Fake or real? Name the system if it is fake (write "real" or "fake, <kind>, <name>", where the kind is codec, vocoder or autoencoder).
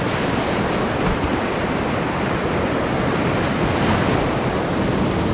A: real